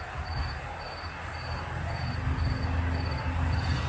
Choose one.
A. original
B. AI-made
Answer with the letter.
A